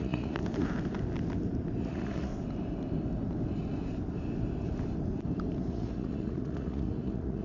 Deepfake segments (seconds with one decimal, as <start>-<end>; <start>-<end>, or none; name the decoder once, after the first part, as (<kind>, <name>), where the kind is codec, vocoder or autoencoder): 0.0-0.4 (vocoder, Vocos); 1.8-2.3; 5.7-7.4

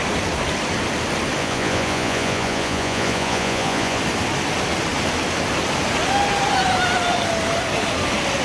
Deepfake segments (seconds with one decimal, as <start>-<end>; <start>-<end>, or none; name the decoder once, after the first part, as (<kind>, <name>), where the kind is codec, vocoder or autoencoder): 1.4-4.0 (vocoder, Vocos)